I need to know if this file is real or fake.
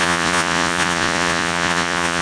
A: fake